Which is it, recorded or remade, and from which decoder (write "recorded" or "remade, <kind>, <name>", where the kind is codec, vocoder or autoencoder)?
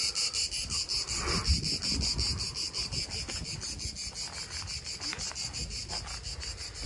recorded